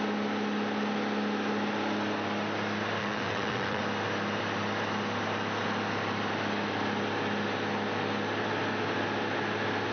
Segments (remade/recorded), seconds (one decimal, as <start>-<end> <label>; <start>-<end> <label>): 0.0-3.0 recorded; 3.0-3.8 remade; 3.8-9.9 recorded